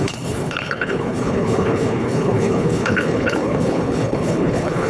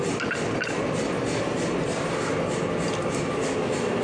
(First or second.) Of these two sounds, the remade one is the first